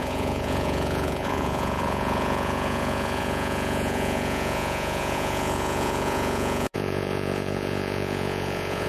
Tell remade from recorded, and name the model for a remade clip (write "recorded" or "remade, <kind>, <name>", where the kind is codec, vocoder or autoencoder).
remade, vocoder, Vocos